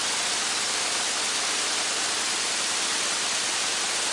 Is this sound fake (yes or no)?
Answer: no